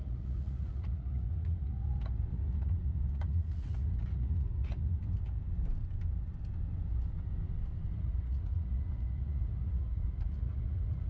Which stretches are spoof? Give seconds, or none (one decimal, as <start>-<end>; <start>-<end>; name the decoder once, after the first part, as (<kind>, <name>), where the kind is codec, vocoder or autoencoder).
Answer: 0.0-5.0 (vocoder, Vocos); 8.0-11.1